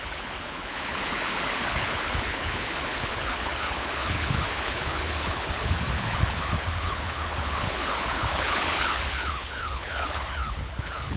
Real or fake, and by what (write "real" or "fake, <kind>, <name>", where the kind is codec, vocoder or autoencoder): fake, codec, HILCodec